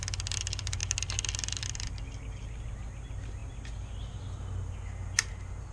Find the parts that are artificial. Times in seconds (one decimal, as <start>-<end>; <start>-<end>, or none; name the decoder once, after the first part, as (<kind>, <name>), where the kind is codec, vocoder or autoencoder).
none